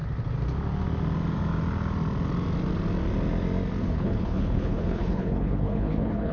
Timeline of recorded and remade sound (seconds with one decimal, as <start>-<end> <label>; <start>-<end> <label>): 0.0-3.8 recorded; 3.8-6.3 remade